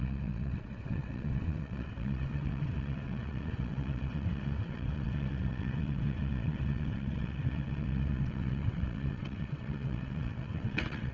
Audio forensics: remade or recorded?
remade